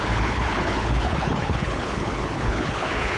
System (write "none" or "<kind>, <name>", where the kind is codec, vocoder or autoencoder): codec, HILCodec